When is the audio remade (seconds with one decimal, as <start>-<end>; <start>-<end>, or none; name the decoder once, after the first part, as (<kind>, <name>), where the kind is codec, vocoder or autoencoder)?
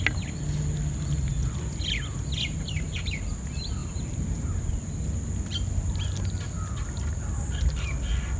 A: 3.8-4.7 (vocoder, BigVGAN v2)